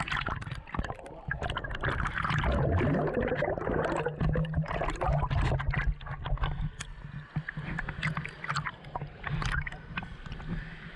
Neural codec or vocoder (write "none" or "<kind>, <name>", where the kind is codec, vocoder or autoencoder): none